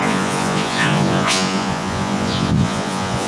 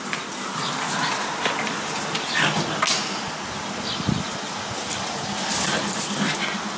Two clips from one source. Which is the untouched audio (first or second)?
second